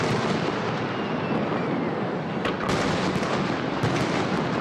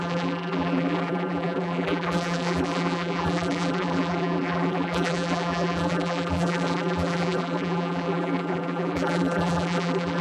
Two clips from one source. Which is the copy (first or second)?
second